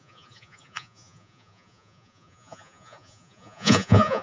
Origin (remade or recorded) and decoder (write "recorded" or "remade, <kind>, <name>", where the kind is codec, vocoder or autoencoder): remade, vocoder, Vocos